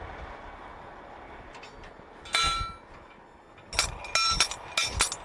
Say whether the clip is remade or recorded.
recorded